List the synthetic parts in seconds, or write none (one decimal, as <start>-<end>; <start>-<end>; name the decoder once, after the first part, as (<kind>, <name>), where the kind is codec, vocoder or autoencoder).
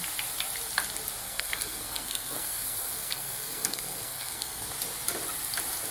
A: 1.2-4.7 (codec, SNAC)